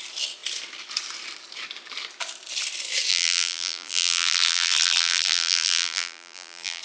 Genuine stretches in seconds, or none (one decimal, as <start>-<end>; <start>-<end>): 0.0-3.1